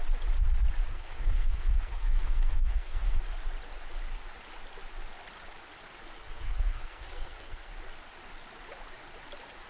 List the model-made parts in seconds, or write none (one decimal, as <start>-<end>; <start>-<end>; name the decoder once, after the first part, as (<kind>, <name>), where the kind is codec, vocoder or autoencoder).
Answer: 0.9-3.2 (codec, SNAC); 6.2-7.7